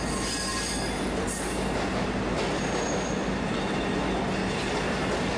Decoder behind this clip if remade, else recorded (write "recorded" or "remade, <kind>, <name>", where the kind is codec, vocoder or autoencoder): recorded